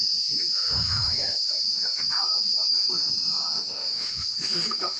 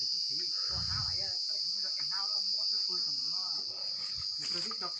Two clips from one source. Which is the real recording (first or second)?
second